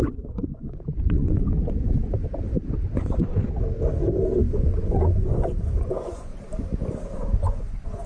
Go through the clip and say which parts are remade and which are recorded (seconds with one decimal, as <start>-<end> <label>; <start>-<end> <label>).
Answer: 0.0-2.3 remade; 2.3-2.9 recorded; 2.9-3.3 remade; 3.3-4.4 recorded; 4.4-6.3 remade; 6.3-7.2 recorded; 7.2-8.1 remade

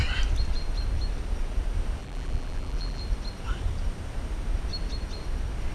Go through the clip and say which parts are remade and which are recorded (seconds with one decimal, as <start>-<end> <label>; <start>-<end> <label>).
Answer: 0.0-2.0 recorded; 2.0-3.0 remade; 3.0-5.7 recorded

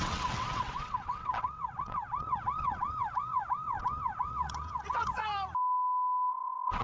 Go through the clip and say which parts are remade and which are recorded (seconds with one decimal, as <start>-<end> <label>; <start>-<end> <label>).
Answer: 0.0-5.2 remade; 5.2-6.3 recorded; 6.3-6.8 remade

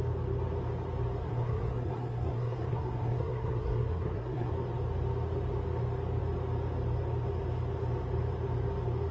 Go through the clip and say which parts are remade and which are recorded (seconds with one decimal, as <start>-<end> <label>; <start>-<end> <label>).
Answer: 0.0-1.2 recorded; 1.2-4.5 remade; 4.5-9.1 recorded

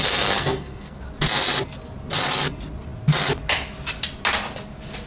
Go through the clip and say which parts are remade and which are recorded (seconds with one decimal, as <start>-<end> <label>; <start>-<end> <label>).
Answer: 0.0-1.0 remade; 1.0-5.1 recorded

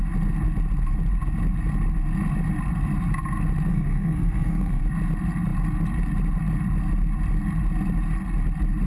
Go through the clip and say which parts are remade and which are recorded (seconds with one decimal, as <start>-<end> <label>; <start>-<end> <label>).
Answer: 0.0-3.7 recorded; 3.7-4.8 remade; 4.8-8.9 recorded

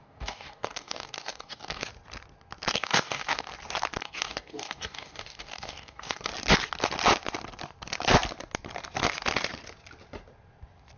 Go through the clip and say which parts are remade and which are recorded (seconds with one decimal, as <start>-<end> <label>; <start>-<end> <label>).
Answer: 0.0-1.9 remade; 1.9-2.7 recorded; 2.7-3.5 remade; 3.5-4.0 recorded; 4.0-6.3 remade; 6.3-11.0 recorded

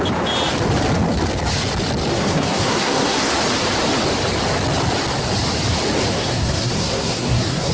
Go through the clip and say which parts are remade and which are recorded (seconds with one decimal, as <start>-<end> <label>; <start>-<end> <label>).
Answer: 0.0-2.1 recorded; 2.1-3.2 remade; 3.2-6.1 recorded; 6.1-7.7 remade